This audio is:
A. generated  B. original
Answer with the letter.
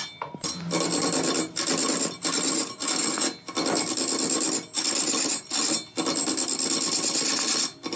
B